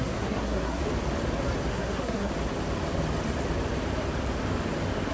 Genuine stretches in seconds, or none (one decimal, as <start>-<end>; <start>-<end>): 0.8-1.7; 2.3-5.1